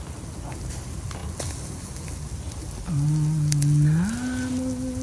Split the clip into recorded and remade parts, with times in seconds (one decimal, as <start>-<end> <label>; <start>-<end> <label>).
0.0-5.0 recorded